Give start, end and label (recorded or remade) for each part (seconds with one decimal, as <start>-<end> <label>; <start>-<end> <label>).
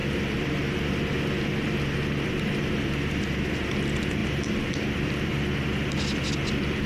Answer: 0.0-6.9 recorded